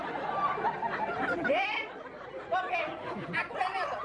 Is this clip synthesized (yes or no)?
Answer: yes